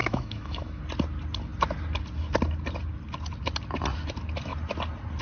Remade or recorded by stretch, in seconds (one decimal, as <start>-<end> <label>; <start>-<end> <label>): 0.0-0.8 remade; 0.8-5.2 recorded